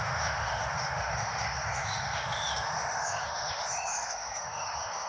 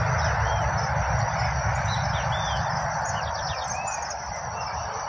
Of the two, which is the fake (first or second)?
first